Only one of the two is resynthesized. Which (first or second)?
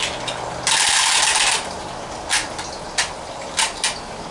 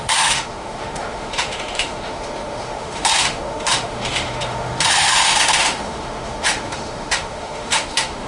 second